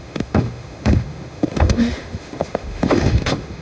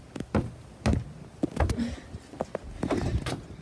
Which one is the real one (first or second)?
second